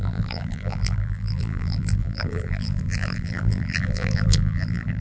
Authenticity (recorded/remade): remade